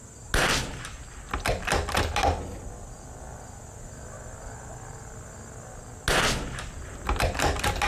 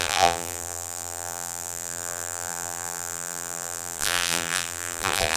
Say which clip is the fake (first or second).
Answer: second